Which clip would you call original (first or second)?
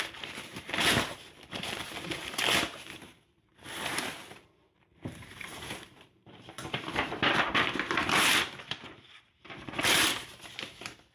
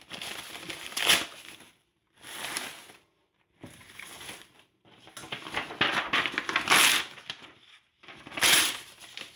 second